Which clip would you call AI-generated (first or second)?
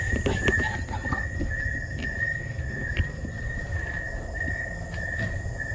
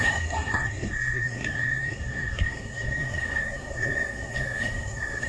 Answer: second